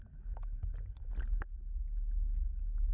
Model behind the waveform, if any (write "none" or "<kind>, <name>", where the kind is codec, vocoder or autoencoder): none